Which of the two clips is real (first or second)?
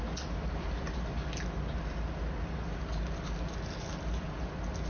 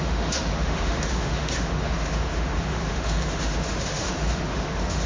first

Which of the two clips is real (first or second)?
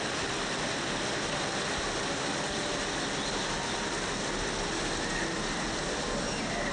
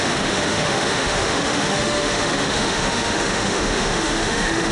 first